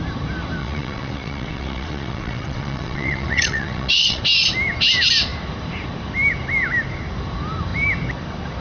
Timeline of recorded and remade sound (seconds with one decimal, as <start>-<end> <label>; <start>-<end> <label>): 0.0-0.6 recorded; 0.6-4.2 remade; 4.2-8.6 recorded